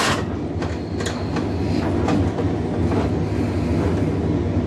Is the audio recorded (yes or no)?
yes